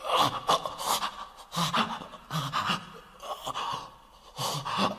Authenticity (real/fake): real